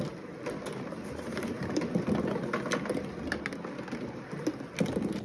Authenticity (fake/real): real